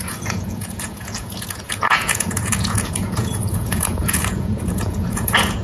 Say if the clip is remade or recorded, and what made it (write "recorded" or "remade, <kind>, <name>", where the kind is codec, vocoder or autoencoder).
remade, vocoder, Vocos